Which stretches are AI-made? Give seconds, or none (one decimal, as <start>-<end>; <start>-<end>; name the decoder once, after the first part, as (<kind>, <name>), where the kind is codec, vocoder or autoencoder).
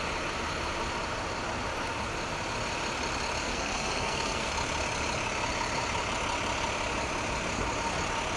3.4-4.5 (codec, SNAC)